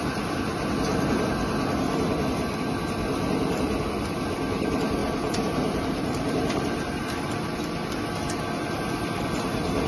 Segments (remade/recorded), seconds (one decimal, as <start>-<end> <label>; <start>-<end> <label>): 0.0-5.0 recorded; 5.0-7.3 remade; 7.3-9.9 recorded